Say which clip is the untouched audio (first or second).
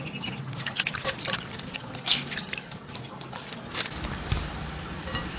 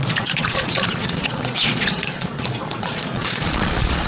first